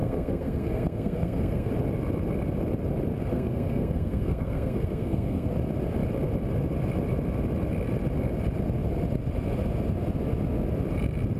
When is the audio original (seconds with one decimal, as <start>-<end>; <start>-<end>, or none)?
1.7-3.3; 5.5-11.4